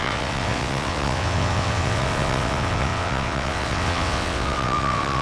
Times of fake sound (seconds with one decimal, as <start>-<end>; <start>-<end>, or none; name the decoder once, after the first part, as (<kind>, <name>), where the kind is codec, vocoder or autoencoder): 0.0-5.2 (vocoder, WaveNeXt)